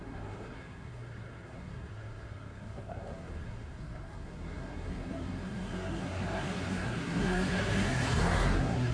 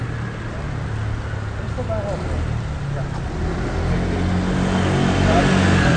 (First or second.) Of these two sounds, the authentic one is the second